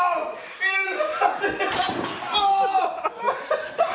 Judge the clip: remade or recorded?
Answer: recorded